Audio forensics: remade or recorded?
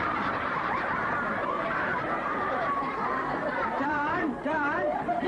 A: remade